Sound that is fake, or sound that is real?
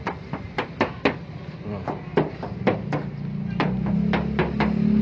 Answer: real